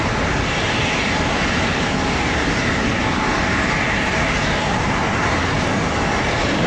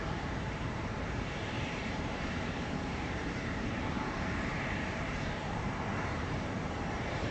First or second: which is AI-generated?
second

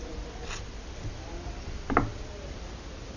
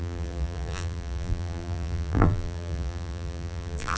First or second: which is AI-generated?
second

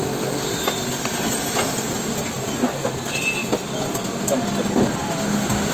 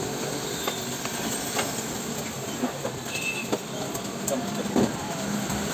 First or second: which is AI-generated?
second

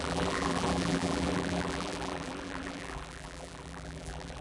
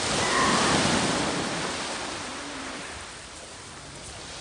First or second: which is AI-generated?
first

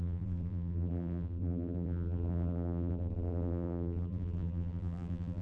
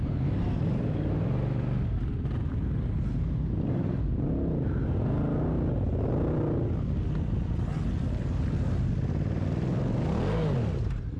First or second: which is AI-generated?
first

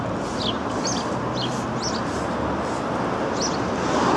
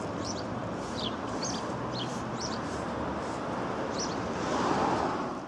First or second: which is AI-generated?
second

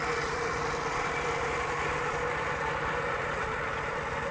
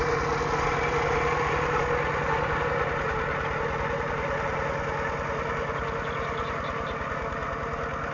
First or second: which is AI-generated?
first